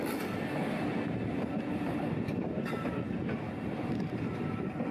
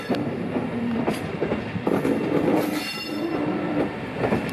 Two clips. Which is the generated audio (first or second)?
second